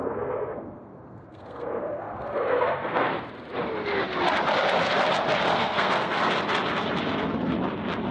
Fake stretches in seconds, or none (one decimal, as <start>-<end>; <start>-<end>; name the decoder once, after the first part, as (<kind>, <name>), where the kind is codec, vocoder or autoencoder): 0.0-3.1 (codec, SNAC); 5.5-6.2